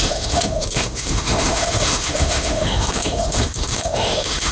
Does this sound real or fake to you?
fake